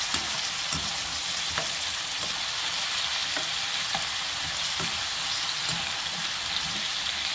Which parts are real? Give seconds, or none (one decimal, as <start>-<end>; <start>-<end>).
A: 0.0-7.3